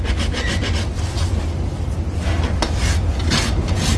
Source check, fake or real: real